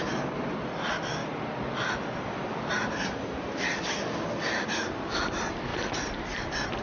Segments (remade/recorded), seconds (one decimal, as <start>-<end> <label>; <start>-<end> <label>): 0.0-6.8 recorded